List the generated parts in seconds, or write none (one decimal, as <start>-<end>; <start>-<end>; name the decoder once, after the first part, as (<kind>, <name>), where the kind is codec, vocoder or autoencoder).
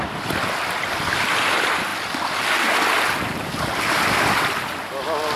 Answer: none